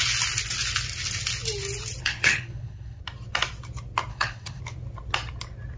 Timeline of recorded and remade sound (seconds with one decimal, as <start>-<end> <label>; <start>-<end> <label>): 0.0-2.0 recorded; 2.0-3.0 remade; 3.0-4.1 recorded; 4.1-4.6 remade; 4.6-5.8 recorded